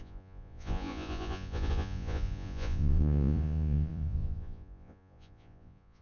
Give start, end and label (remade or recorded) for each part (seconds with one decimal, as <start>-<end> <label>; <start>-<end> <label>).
0.0-6.0 remade